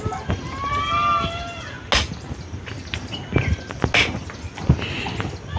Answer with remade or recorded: recorded